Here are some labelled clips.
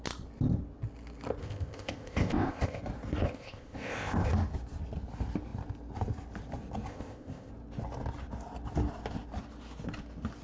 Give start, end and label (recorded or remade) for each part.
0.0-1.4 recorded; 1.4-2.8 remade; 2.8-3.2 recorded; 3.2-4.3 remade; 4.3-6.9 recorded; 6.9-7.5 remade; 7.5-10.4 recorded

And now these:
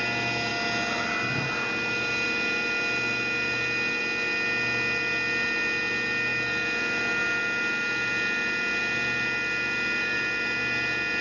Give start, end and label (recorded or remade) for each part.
0.0-11.2 recorded

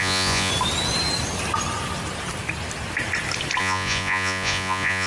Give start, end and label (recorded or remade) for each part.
0.0-0.5 remade; 0.5-3.6 recorded; 3.6-5.1 remade

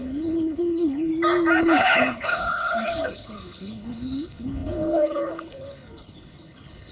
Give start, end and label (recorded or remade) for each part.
0.0-1.1 remade; 1.1-1.6 recorded; 1.6-6.9 remade

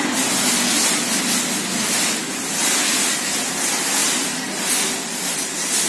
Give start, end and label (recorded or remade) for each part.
0.0-4.0 recorded; 4.0-5.4 remade; 5.4-5.9 recorded

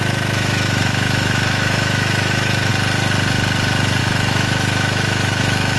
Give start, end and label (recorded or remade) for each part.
0.0-2.7 remade; 2.7-4.0 recorded; 4.0-5.8 remade

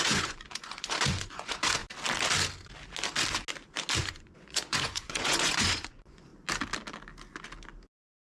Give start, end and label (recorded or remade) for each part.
0.0-1.8 remade; 1.8-4.0 recorded; 4.0-6.3 remade; 6.3-8.3 recorded